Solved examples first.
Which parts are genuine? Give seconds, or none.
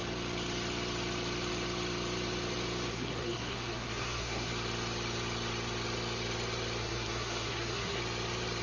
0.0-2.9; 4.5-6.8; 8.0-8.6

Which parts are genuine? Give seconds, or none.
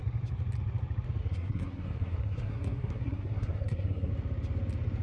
0.0-1.2; 4.1-5.0